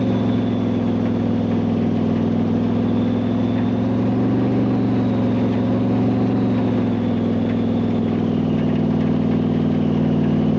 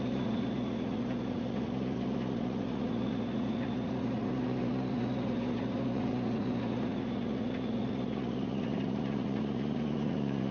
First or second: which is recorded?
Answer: first